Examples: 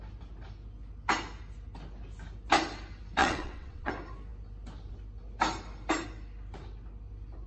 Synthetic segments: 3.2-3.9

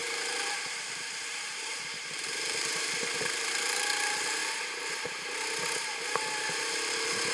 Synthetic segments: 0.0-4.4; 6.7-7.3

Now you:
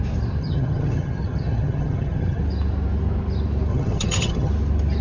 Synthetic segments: 0.4-2.4; 3.7-4.5

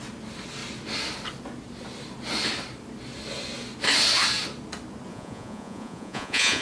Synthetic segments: 5.1-6.6